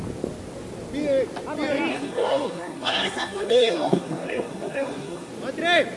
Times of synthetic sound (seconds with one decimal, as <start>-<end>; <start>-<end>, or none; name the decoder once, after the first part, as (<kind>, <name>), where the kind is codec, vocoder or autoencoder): 1.9-5.3 (codec, SNAC)